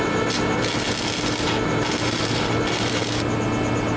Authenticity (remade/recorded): recorded